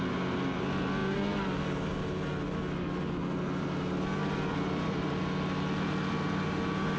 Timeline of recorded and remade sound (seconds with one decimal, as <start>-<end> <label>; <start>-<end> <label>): 0.0-4.2 recorded; 4.2-5.2 remade; 5.2-7.0 recorded